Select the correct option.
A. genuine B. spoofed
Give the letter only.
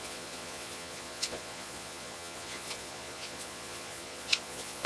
B